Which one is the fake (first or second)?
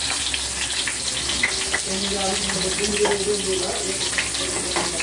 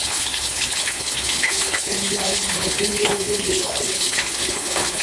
second